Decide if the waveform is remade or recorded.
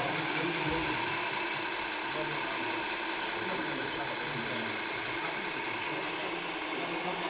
recorded